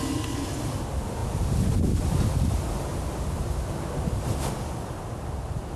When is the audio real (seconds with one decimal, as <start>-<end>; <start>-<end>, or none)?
0.0-5.8